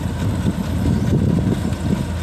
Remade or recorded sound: recorded